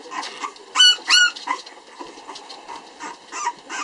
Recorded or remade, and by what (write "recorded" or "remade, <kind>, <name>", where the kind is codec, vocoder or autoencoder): recorded